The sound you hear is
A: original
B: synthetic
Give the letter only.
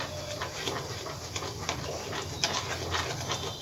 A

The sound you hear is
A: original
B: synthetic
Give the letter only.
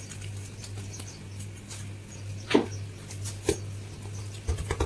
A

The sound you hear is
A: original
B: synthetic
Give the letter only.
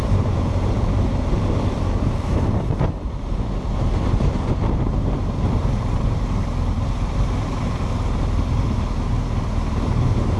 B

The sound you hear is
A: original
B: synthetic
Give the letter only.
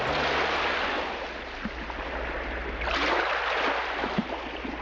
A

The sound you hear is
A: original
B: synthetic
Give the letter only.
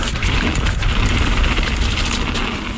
A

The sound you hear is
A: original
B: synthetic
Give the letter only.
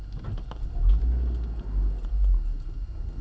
A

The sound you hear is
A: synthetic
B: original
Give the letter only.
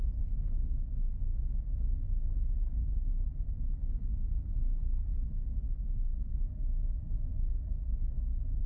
B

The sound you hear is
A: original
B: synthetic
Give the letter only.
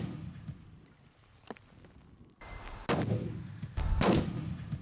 A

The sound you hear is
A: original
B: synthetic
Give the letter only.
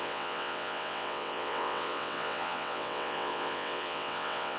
B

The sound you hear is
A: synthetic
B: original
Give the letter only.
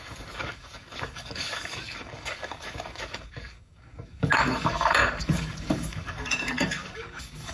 A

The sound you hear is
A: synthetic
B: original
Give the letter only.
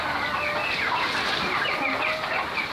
B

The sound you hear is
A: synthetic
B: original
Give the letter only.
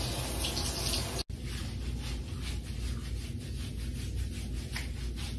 B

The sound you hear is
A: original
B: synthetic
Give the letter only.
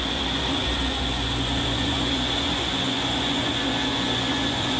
B